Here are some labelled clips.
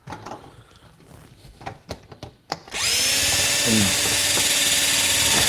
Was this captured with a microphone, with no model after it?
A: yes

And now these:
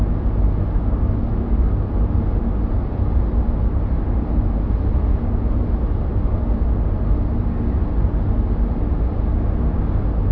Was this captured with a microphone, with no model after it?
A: yes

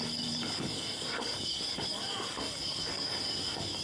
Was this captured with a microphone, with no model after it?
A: no